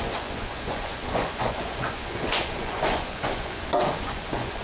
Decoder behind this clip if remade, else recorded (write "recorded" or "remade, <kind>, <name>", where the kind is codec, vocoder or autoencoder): remade, vocoder, Vocos